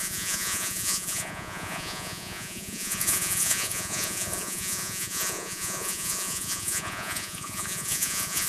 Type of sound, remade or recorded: remade